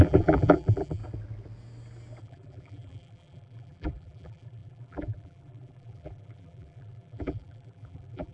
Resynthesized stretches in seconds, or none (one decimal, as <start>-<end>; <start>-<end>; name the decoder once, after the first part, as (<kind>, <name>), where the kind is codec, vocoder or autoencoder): 0.0-1.0 (vocoder, BigVGAN v2); 2.2-8.3